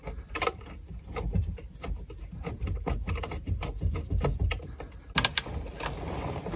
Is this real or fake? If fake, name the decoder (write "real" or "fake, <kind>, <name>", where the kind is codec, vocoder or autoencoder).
real